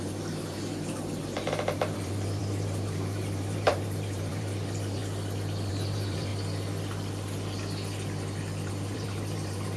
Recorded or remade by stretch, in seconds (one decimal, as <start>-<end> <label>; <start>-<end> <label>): 0.0-5.0 remade; 5.0-5.7 recorded; 5.7-6.3 remade; 6.3-8.7 recorded; 8.7-9.8 remade